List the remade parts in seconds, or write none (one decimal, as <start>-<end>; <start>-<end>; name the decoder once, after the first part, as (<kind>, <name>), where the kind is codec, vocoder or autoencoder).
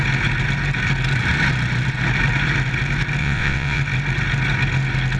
3.2-3.8 (vocoder, WaveNeXt)